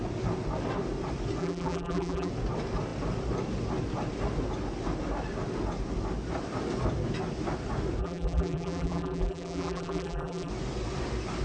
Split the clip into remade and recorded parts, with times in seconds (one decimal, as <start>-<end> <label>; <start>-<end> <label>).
0.0-1.4 recorded; 1.4-2.3 remade; 2.3-8.0 recorded; 8.0-10.5 remade; 10.5-11.4 recorded